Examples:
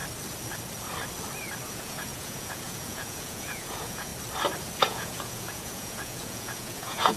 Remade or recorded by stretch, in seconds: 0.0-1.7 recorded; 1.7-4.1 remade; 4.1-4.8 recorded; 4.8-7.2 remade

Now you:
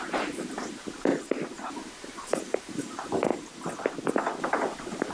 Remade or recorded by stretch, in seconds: 0.0-1.1 remade; 1.1-1.7 recorded; 1.7-3.3 remade; 3.3-4.4 recorded; 4.4-5.1 remade

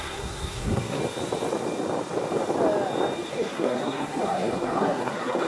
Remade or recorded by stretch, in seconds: 0.0-1.0 remade; 1.0-3.3 recorded; 3.3-5.5 remade

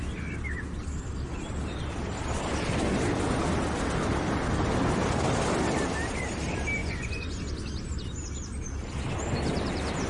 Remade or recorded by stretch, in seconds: 0.0-6.8 recorded; 6.8-7.4 remade; 7.4-10.1 recorded

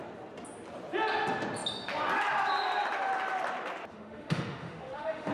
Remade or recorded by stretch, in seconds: 0.0-3.9 recorded; 3.9-5.3 remade

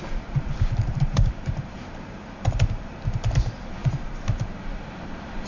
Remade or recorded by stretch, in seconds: 0.0-3.8 remade; 3.8-4.7 recorded; 4.7-5.5 remade

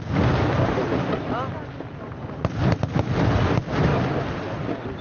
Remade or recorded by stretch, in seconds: 0.0-5.0 recorded

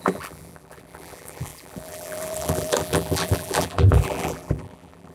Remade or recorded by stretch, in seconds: 0.0-5.1 remade